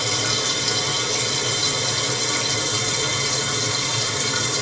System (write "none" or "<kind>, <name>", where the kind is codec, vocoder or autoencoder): none